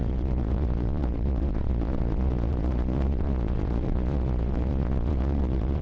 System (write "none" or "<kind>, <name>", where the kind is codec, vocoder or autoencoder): vocoder, Vocos